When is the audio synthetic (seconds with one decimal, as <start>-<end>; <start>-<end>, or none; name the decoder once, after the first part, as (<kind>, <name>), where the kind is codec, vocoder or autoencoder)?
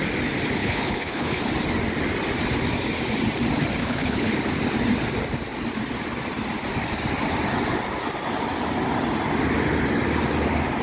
0.6-1.4 (codec, HILCodec); 3.8-4.3